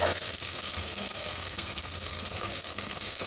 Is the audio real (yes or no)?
no